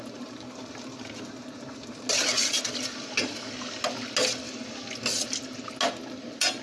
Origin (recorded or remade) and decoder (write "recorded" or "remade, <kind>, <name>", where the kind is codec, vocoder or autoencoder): recorded